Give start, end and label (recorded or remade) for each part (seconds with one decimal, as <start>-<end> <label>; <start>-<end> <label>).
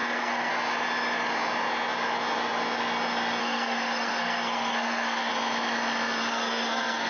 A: 0.0-0.5 remade; 0.5-3.4 recorded; 3.4-5.3 remade; 5.3-6.2 recorded; 6.2-7.1 remade